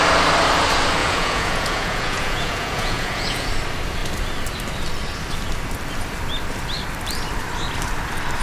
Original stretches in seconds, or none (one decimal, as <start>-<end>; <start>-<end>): 0.0-1.0; 3.5-8.4

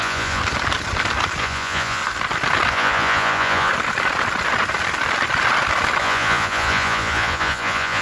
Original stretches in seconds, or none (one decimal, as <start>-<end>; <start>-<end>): 0.4-1.4; 2.0-2.7; 3.7-6.0